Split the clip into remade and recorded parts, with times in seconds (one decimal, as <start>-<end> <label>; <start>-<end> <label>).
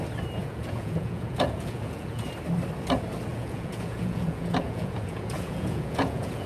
0.0-0.4 recorded; 0.4-2.3 remade; 2.3-3.3 recorded; 3.3-6.5 remade